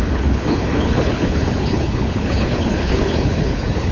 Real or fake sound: fake